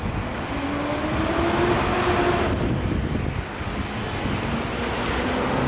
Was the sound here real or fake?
real